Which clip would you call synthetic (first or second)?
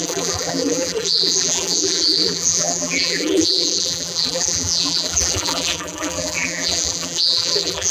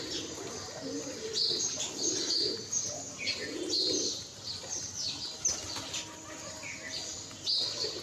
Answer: first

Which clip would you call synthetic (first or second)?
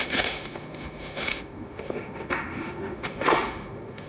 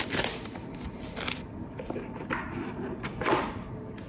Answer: first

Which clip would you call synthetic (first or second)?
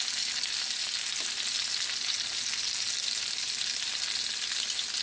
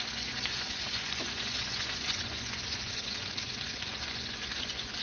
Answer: second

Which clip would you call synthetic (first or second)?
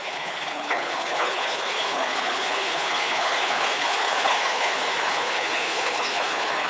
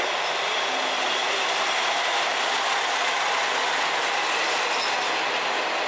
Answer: first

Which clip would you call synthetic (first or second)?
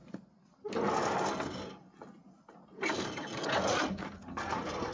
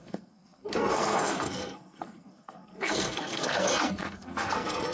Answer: second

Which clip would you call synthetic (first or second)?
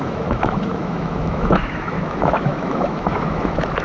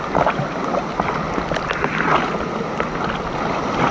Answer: first